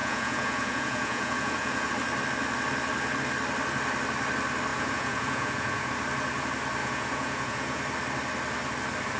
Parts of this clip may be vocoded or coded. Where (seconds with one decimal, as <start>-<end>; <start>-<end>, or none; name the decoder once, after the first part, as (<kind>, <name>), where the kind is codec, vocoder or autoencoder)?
0.0-1.9 (vocoder, Vocos); 4.7-5.9; 6.8-7.8

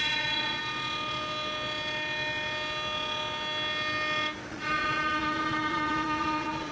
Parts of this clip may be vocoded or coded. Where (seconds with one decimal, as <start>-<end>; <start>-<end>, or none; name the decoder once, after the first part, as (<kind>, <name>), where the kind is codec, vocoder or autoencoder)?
0.0-0.6 (vocoder, Vocos); 4.5-6.7